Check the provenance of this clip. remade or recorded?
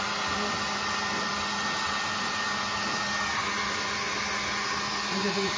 recorded